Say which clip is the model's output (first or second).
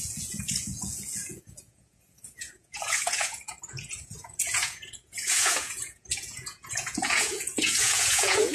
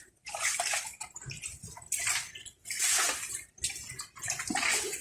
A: first